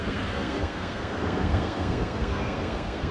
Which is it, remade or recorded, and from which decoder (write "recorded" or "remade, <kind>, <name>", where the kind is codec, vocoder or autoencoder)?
remade, codec, SNAC